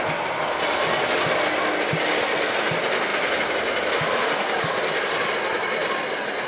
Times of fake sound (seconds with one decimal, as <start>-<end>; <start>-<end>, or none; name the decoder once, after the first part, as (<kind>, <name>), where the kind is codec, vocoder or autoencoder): none